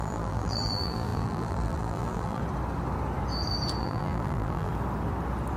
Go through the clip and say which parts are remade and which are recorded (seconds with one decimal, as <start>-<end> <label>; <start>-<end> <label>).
0.0-2.4 remade; 2.4-3.8 recorded; 3.8-4.7 remade; 4.7-5.6 recorded